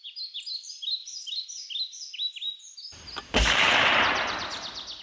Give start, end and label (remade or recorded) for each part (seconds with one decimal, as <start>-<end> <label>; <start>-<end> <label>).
0.0-5.0 recorded